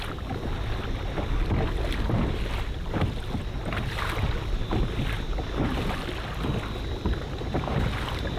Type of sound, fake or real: real